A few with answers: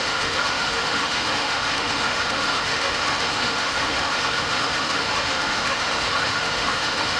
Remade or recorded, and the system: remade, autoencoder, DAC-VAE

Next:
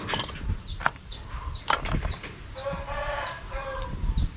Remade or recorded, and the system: recorded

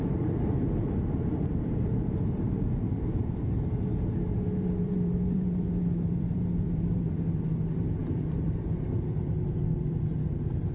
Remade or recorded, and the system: remade, vocoder, BigVGAN v2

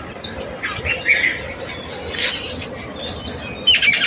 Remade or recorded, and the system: recorded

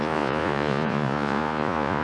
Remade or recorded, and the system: remade, vocoder, Vocos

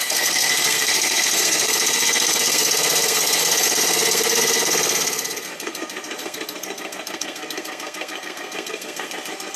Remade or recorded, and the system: remade, codec, SNAC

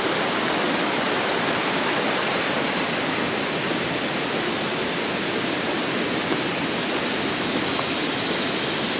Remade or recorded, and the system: recorded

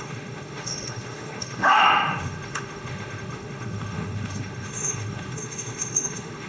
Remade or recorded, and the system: remade, autoencoder, DAC-VAE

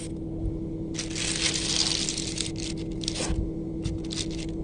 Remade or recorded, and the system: recorded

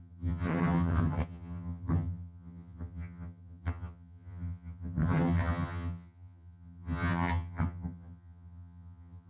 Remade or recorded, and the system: remade, vocoder, HiFi-GAN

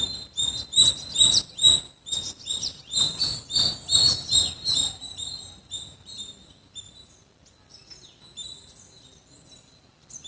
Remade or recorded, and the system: recorded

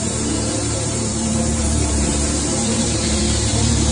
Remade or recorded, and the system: remade, vocoder, BigVGAN v2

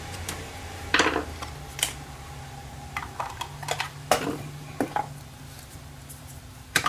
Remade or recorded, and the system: remade, vocoder, BigVGAN v2